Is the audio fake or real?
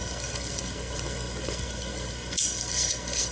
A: fake